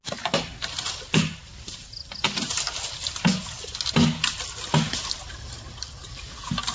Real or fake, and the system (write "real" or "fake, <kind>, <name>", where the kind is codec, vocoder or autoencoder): real